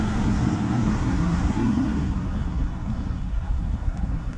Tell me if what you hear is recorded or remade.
remade